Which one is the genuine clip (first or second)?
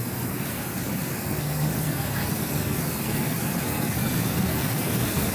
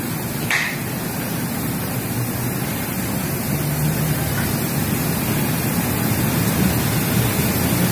second